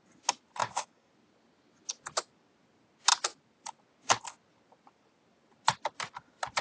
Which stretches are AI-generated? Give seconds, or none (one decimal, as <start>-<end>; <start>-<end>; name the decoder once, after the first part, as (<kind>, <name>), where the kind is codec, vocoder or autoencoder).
0.6-1.1 (codec, DAC)